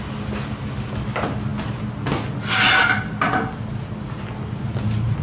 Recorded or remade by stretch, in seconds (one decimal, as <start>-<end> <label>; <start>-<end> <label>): 0.0-5.2 recorded